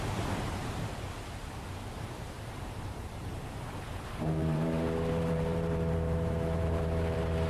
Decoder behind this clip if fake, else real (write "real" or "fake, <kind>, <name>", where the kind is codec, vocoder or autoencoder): fake, vocoder, BigVGAN v2